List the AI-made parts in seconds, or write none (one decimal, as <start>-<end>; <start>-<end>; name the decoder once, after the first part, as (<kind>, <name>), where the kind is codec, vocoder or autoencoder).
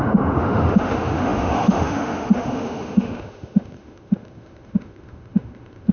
0.0-5.9 (autoencoder, DAC-VAE)